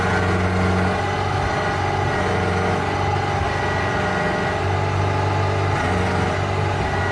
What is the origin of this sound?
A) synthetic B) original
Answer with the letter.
B